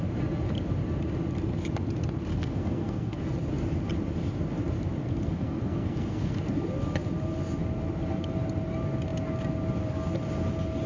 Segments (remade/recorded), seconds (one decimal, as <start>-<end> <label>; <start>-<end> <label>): 0.0-2.3 recorded; 2.3-3.2 remade; 3.2-5.0 recorded; 5.0-6.4 remade; 6.4-10.9 recorded